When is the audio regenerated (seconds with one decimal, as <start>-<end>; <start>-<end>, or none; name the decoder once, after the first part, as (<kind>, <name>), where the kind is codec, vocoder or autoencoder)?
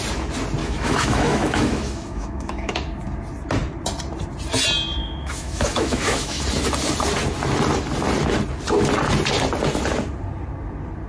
0.6-2.7 (autoencoder, DAC-VAE); 5.0-6.4